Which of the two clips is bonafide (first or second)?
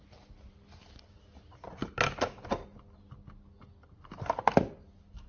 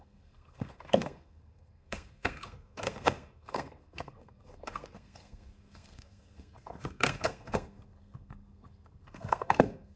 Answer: first